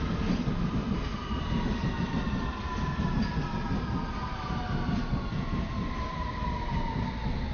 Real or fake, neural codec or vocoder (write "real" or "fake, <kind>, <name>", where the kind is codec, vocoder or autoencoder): real